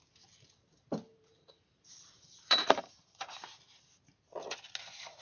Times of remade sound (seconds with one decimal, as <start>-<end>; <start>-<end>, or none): 1.1-4.0